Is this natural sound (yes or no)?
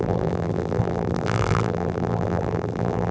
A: no